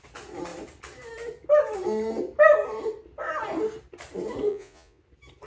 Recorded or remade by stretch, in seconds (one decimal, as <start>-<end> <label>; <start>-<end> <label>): 0.0-4.5 recorded; 4.5-5.0 remade; 5.0-5.5 recorded